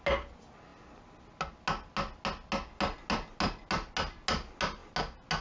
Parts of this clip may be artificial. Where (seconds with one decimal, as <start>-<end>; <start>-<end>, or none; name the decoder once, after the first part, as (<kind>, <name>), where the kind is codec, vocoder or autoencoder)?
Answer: none